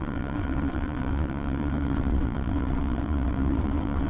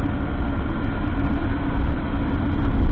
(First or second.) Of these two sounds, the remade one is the first